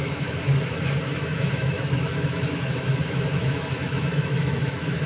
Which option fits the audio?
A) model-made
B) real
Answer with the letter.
A